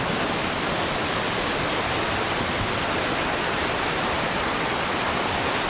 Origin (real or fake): real